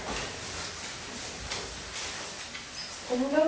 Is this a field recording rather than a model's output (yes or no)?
yes